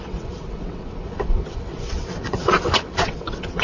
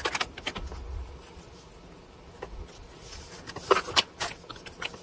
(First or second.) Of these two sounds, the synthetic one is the first